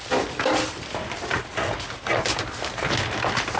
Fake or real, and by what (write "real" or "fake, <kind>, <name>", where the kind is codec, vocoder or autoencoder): fake, vocoder, BigVGAN v2